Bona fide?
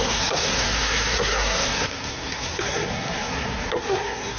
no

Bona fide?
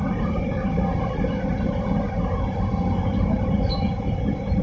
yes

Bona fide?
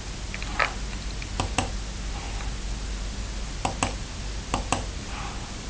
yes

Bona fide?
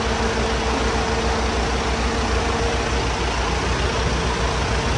yes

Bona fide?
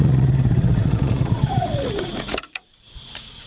no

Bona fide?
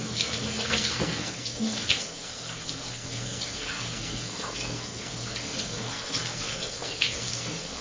no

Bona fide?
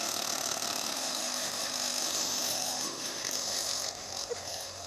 no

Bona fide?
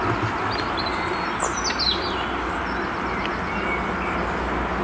yes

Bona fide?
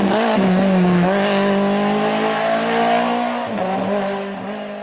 yes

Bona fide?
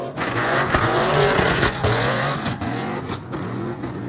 no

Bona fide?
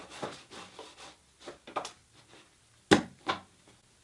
yes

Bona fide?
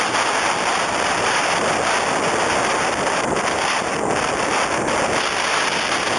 yes